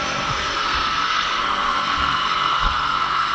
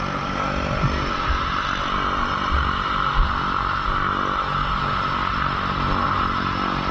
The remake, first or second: first